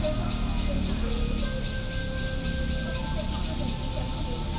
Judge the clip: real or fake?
real